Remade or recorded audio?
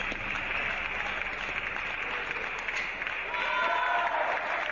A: recorded